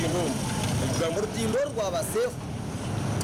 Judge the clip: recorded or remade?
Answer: recorded